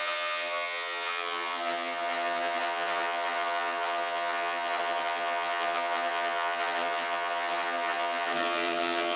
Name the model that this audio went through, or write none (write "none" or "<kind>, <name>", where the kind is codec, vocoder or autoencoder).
vocoder, HiFi-GAN